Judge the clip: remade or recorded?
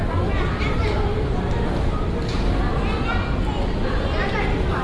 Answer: recorded